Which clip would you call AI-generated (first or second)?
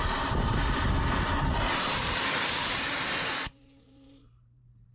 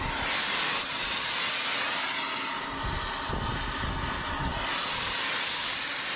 first